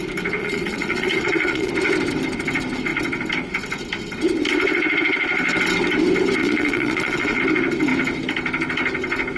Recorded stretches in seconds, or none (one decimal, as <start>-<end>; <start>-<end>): 0.0-0.4; 1.7-6.4; 7.4-9.4